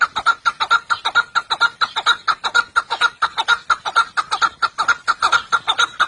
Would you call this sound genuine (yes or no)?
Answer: yes